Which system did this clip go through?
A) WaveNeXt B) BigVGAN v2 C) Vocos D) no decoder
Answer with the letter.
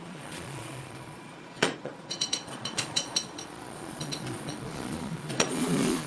C